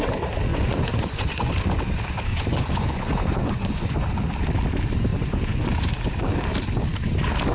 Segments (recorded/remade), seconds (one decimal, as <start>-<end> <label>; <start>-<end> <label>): 0.0-0.5 recorded; 0.5-1.5 remade; 1.5-2.3 recorded; 2.3-4.0 remade; 4.0-5.1 recorded; 5.1-5.9 remade; 5.9-7.5 recorded